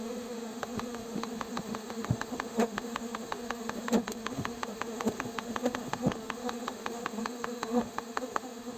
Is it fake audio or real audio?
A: fake